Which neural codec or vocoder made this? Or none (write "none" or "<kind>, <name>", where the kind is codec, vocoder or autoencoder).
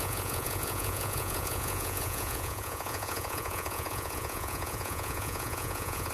vocoder, Vocos